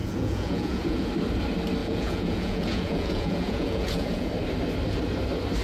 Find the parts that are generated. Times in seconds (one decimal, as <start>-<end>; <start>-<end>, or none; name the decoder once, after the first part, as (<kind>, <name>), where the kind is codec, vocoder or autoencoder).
0.0-1.1 (vocoder, Vocos); 1.8-4.3